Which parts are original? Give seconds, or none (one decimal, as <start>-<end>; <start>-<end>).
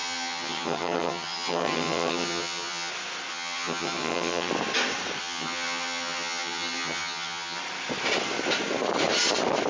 2.9-3.3; 4.5-5.2; 7.6-9.7